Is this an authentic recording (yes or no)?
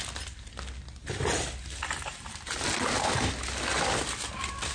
yes